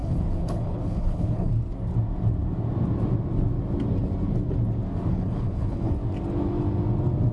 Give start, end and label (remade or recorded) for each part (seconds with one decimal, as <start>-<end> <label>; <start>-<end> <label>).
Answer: 0.0-1.5 remade; 1.5-5.1 recorded; 5.1-5.9 remade; 5.9-7.3 recorded